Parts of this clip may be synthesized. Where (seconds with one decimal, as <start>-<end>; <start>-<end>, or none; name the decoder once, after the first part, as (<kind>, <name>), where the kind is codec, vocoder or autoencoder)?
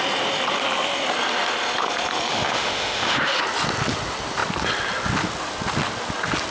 2.3-3.4 (autoencoder, DAC-VAE)